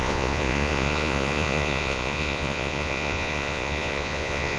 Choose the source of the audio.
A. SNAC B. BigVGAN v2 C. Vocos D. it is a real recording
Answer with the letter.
C